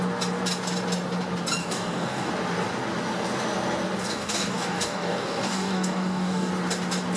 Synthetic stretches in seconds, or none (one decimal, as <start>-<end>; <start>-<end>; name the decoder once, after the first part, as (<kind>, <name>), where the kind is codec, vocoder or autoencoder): 1.6-2.3 (codec, DAC); 4.0-6.5

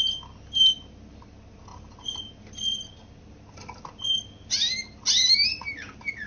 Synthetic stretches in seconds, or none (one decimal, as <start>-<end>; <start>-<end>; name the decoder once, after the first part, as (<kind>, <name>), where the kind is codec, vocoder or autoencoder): none

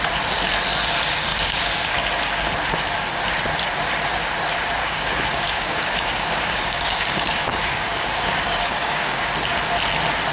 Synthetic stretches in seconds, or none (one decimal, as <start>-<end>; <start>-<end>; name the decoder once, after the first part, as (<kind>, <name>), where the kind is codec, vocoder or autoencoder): 1.3-2.1 (codec, DAC); 4.8-9.3